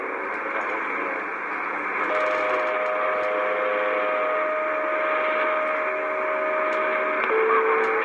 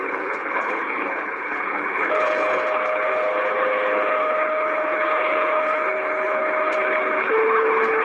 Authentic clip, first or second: first